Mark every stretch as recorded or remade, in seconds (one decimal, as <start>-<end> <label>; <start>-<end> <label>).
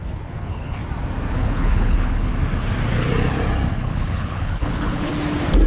0.0-0.8 remade; 0.8-1.3 recorded; 1.3-2.3 remade; 2.3-3.7 recorded; 3.7-5.1 remade; 5.1-5.7 recorded